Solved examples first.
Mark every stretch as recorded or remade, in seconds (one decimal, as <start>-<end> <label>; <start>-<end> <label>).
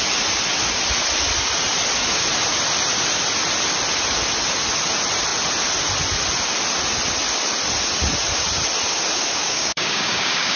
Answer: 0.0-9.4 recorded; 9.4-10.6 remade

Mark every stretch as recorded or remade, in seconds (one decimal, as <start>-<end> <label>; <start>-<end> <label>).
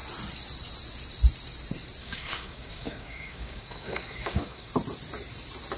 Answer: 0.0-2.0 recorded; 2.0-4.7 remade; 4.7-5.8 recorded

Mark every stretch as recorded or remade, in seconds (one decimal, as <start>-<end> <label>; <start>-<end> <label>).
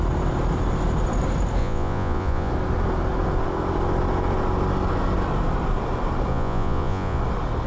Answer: 0.0-1.6 recorded; 1.6-2.5 remade; 2.5-6.3 recorded; 6.3-7.2 remade; 7.2-7.7 recorded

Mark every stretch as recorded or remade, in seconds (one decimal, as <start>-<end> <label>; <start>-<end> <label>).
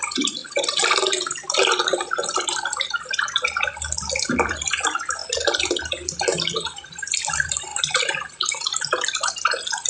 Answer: 0.0-5.2 remade; 5.2-5.8 recorded; 5.8-9.9 remade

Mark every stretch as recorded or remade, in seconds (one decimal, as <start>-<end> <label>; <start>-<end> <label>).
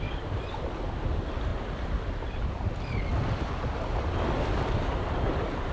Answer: 0.0-5.7 recorded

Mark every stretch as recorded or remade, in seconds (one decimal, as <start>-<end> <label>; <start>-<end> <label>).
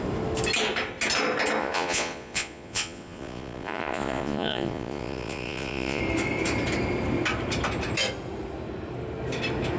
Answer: 0.0-1.6 recorded; 1.6-6.0 remade; 6.0-9.8 recorded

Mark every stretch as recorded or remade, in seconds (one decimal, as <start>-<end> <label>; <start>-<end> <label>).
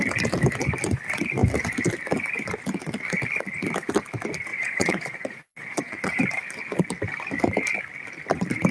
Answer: 0.0-4.5 recorded; 4.5-6.2 remade; 6.2-8.7 recorded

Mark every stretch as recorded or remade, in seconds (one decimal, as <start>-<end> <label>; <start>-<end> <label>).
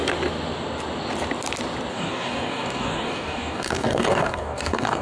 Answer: 0.0-1.9 recorded; 1.9-5.0 remade